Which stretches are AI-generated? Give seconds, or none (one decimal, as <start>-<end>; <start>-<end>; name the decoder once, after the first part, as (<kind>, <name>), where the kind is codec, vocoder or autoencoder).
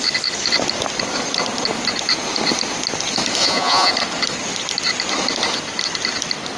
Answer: 3.4-3.9 (vocoder, Vocos)